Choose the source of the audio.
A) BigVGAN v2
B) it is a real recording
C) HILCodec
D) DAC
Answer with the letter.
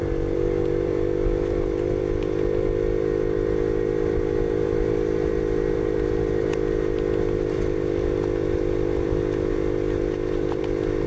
A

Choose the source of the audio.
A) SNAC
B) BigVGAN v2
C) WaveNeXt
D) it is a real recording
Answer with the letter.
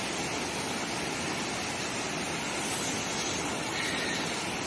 D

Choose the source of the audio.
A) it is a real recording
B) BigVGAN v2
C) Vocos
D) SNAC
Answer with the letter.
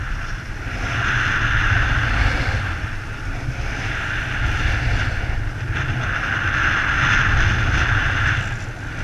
A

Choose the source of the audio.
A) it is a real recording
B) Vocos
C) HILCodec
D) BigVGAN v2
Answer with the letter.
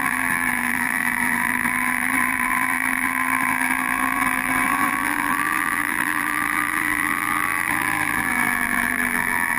D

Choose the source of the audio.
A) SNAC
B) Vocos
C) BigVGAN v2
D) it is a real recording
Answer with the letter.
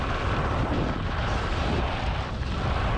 D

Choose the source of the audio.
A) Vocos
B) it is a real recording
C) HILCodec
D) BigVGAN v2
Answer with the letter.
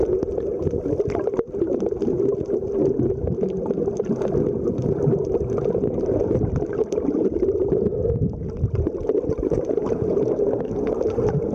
B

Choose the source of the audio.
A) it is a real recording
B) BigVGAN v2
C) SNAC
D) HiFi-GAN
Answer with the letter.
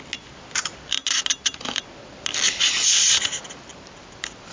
A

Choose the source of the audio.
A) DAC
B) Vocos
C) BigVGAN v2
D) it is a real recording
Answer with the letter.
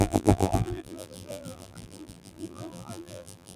C